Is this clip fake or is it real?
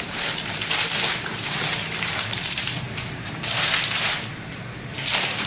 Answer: fake